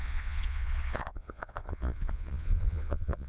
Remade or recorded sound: remade